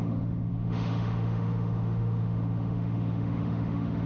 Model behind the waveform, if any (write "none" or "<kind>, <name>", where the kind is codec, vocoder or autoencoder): autoencoder, DAC-VAE